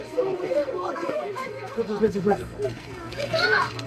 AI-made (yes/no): yes